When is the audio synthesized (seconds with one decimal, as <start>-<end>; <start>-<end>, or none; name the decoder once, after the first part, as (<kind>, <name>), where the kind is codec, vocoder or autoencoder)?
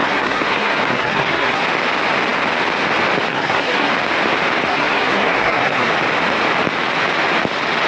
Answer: 0.0-1.6 (codec, SNAC); 3.3-3.9; 4.7-5.9